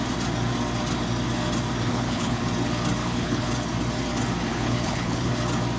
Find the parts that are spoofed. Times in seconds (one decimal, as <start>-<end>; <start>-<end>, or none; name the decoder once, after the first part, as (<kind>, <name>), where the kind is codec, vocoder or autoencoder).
1.9-2.4 (codec, HILCodec); 3.0-3.5; 4.5-5.3